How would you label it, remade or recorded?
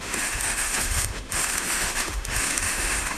remade